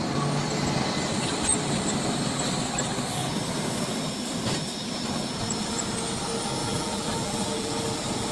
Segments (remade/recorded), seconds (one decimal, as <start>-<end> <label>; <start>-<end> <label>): 0.0-6.6 recorded; 6.6-7.8 remade; 7.8-8.3 recorded